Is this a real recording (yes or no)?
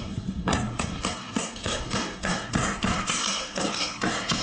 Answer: no